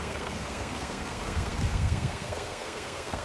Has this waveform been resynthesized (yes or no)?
yes